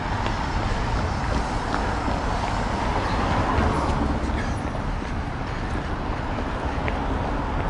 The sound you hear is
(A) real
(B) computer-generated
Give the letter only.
A